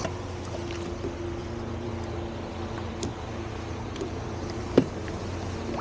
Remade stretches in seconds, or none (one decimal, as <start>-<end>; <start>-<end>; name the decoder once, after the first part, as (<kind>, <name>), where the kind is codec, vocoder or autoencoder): 1.4-1.9 (vocoder, BigVGAN v2); 3.1-5.2